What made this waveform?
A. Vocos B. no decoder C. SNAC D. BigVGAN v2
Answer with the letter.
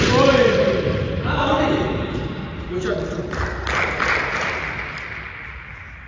B